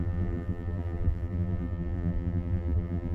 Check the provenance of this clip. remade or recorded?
remade